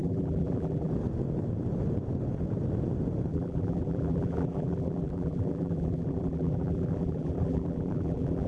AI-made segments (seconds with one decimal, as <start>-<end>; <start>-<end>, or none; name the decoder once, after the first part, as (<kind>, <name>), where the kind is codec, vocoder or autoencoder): 0.0-0.9 (vocoder, BigVGAN v2); 3.3-8.5